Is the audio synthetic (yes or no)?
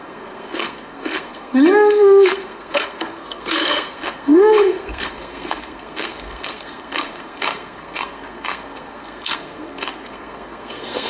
yes